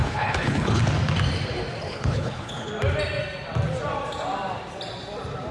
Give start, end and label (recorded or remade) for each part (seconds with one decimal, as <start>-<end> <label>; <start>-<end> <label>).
0.0-0.8 remade; 0.8-1.9 recorded; 1.9-2.7 remade; 2.7-5.5 recorded